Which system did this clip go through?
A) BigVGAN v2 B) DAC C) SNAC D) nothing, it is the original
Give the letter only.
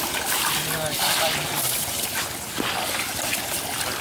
D